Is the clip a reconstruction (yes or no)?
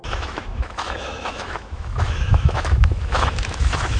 yes